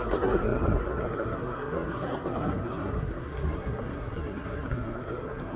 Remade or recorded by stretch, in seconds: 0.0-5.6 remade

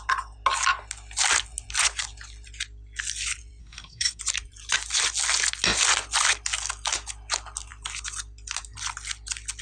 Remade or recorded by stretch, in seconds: 0.0-3.6 recorded; 3.6-4.2 remade; 4.2-9.6 recorded

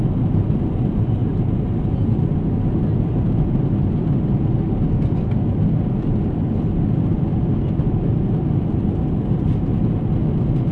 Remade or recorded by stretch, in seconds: 0.0-10.7 recorded